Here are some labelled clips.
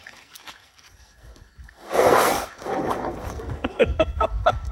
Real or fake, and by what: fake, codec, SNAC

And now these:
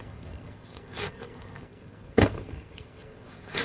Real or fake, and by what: fake, codec, SNAC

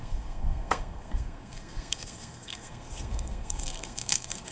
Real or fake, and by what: fake, codec, SNAC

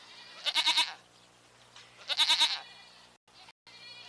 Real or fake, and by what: real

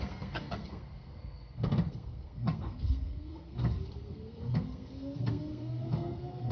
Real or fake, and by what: fake, codec, SNAC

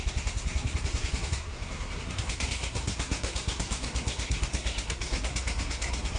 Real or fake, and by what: fake, codec, SNAC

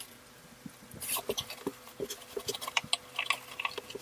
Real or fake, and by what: real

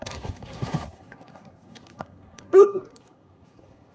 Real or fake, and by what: fake, codec, SNAC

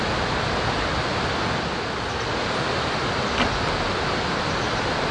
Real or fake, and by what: real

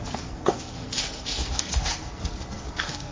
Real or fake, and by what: fake, codec, SNAC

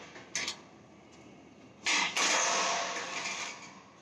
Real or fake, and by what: real